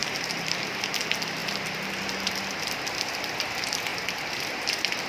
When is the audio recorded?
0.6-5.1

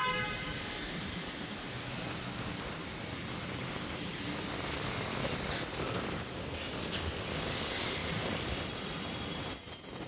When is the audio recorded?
1.7-2.8; 4.3-8.0

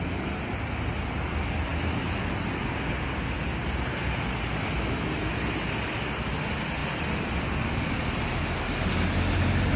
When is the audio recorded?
0.0-9.8

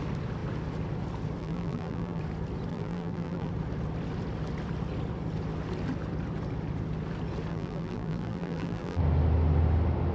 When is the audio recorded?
0.0-1.4; 2.2-2.7; 3.5-7.5; 9.0-10.1

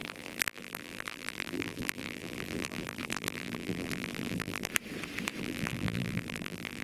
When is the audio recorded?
4.7-5.4

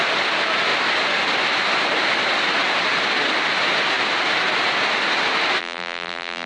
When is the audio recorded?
0.0-5.6

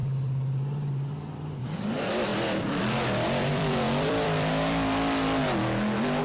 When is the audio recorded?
1.6-2.3; 4.5-6.2

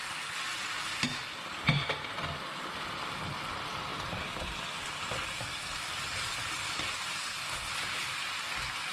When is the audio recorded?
0.0-0.5; 1.2-3.9; 6.8-8.9